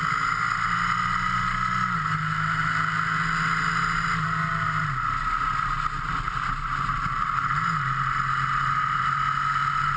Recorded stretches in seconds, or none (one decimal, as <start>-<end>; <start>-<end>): 0.0-10.0